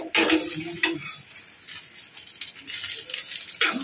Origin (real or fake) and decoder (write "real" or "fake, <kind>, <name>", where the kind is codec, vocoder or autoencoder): real